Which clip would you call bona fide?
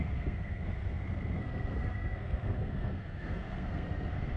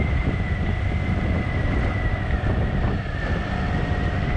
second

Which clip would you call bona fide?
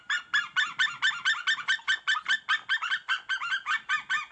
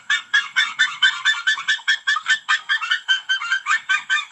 first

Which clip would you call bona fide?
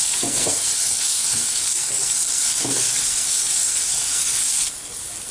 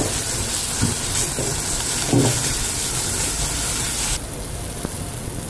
second